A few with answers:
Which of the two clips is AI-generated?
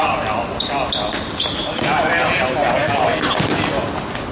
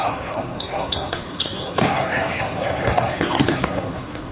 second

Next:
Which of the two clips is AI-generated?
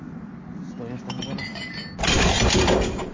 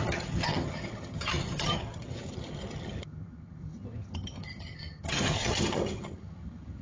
second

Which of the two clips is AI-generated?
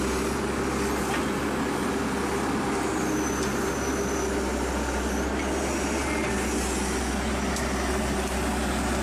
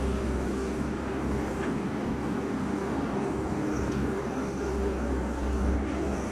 second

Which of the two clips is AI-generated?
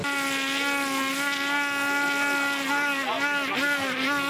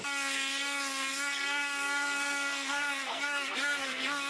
second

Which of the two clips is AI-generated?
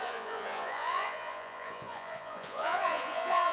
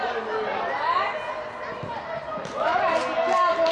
first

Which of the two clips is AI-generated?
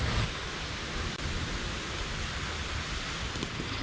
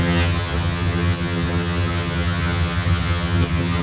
second